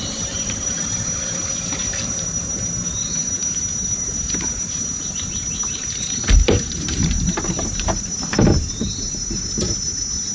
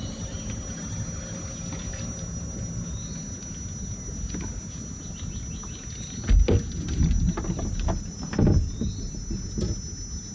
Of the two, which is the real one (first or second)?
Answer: second